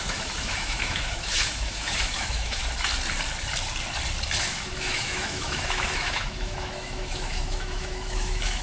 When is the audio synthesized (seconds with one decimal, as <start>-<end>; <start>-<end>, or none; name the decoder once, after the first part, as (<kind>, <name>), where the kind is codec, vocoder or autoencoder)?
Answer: 0.0-2.6 (autoencoder, DAC-VAE); 4.4-8.6